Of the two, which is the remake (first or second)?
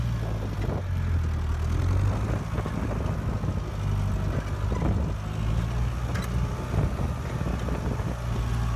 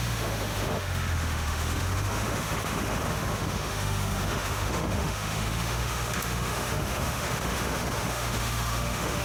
second